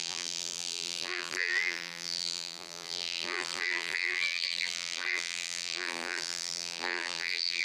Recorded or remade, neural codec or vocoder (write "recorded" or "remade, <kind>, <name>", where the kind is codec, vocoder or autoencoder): remade, vocoder, BigVGAN v2